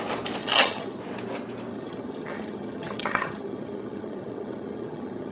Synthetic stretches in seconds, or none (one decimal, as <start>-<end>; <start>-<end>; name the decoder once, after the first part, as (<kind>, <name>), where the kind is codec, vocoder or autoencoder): 0.4-1.0 (vocoder, HiFi-GAN); 1.7-5.3